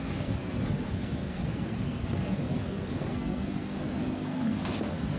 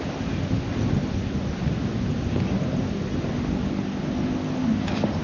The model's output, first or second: first